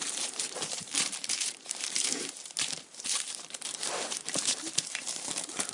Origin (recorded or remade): remade